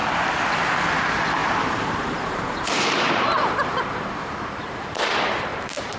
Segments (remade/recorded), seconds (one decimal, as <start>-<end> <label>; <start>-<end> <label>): 0.0-1.4 recorded; 1.4-5.0 remade; 5.0-5.5 recorded; 5.5-6.0 remade